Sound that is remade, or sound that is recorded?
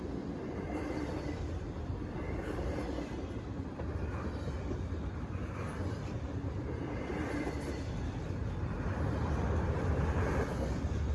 remade